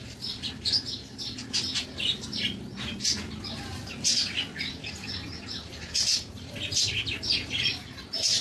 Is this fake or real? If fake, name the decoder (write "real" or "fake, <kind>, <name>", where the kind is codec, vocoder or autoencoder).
real